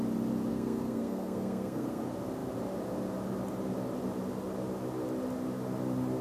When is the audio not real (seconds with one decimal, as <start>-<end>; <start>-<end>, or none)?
0.5-2.0